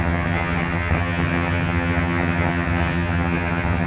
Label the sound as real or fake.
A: fake